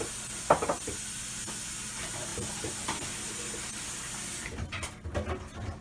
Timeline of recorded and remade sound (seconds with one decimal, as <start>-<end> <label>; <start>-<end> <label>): 0.0-5.8 recorded